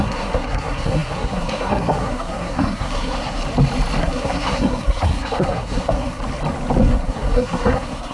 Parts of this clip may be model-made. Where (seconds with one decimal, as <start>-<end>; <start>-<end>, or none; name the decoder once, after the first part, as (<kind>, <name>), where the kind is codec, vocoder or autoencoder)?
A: 0.0-3.4 (codec, SNAC); 4.0-6.2; 6.8-8.1